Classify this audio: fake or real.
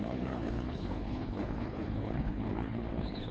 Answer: fake